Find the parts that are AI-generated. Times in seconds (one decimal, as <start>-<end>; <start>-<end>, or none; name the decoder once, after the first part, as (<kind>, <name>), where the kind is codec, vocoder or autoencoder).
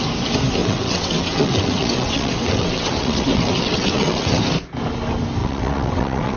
0.6-4.4 (vocoder, WaveNeXt); 5.4-6.4